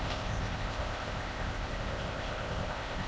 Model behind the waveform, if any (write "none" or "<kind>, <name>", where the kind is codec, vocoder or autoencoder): codec, ZipCodec